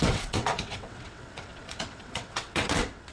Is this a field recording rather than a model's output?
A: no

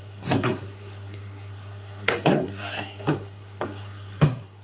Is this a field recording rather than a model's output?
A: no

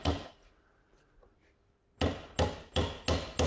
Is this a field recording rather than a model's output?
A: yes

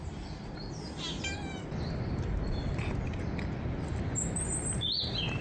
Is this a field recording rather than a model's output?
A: yes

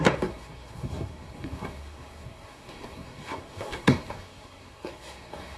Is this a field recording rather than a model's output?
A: no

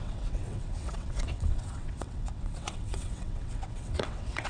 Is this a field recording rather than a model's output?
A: no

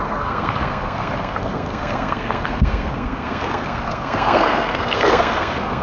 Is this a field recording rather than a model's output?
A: no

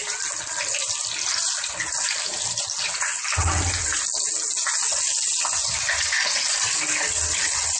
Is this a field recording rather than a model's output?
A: yes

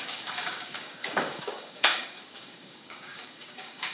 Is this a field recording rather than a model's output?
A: no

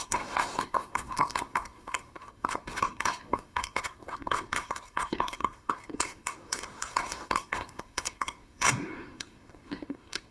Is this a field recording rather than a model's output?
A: no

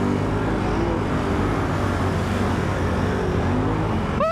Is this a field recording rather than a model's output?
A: yes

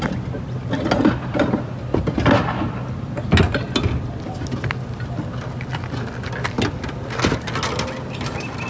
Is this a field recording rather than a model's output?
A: yes